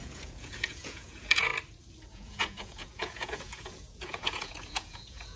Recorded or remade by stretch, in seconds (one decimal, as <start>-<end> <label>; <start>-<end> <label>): 0.0-1.5 remade; 1.5-2.1 recorded; 2.1-5.4 remade